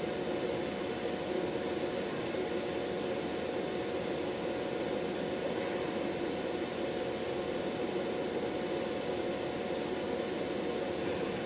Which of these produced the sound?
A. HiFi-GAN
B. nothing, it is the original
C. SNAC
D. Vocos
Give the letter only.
B